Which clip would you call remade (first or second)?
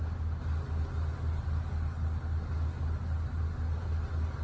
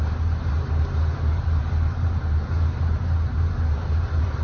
second